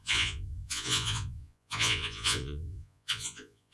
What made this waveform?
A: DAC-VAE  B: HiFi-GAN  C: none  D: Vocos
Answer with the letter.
D